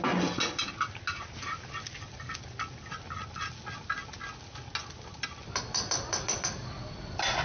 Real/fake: real